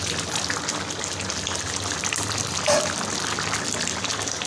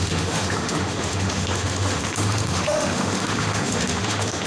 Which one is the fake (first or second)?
second